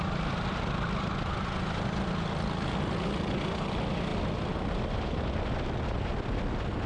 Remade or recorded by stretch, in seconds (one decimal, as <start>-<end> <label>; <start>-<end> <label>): 0.0-6.9 recorded